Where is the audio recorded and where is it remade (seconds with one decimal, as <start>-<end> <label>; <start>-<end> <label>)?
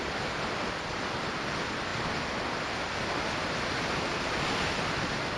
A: 0.0-5.4 recorded